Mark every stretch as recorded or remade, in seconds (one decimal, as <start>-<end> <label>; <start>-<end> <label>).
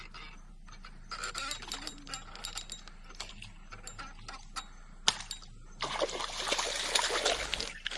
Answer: 0.0-8.0 recorded